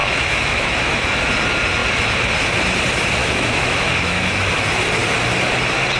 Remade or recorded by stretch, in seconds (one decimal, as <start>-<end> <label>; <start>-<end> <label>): 0.0-1.2 remade; 1.2-3.2 recorded; 3.2-4.5 remade; 4.5-6.0 recorded